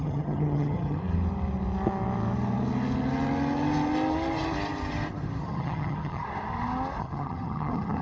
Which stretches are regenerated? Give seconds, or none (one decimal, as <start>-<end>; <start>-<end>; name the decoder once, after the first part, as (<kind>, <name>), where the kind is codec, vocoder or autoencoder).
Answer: 0.0-1.0 (vocoder, HiFi-GAN); 5.4-6.2; 7.0-8.0

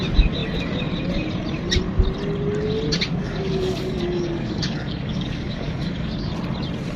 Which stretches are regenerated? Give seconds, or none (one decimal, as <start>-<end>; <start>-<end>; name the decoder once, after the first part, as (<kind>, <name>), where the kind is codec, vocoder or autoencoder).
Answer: 3.1-6.3 (codec, DAC)